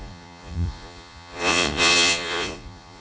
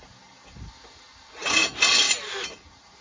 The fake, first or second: first